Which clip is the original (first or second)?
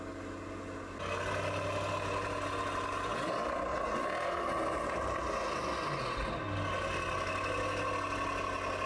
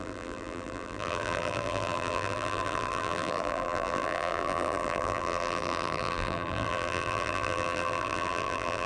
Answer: first